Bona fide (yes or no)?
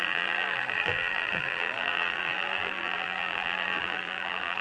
no